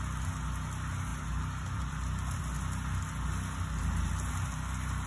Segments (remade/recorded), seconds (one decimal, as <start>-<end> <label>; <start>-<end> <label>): 0.0-1.1 recorded; 1.1-2.4 remade; 2.4-5.1 recorded